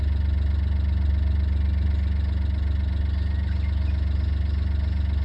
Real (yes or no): yes